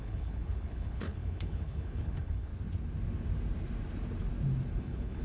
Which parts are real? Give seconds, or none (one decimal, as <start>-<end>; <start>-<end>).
2.5-4.8